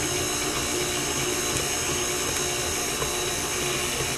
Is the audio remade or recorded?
recorded